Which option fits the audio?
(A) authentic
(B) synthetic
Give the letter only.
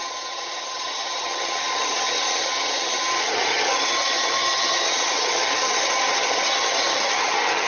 B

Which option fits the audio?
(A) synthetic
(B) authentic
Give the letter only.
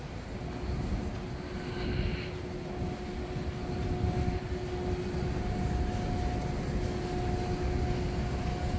B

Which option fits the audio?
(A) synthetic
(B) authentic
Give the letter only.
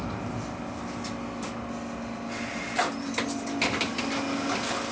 B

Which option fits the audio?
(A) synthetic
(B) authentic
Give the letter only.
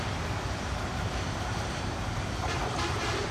A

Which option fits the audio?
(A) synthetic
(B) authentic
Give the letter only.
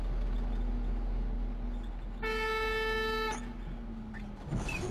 B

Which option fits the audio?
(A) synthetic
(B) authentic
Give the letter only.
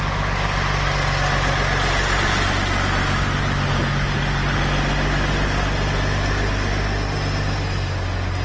B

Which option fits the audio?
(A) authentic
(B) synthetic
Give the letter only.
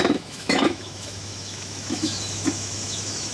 B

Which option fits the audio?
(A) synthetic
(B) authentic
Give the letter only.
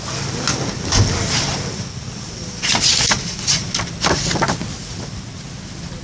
B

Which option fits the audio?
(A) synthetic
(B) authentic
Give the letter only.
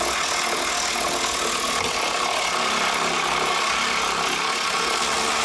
B